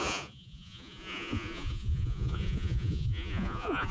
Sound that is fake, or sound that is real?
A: fake